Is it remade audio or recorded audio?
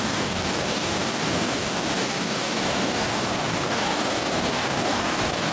remade